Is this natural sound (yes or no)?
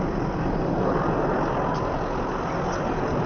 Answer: yes